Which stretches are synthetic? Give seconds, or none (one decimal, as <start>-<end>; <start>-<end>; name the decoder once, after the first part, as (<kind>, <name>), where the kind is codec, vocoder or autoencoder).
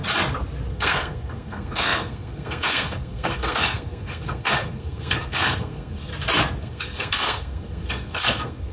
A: 0.7-6.1 (codec, SNAC); 6.6-8.7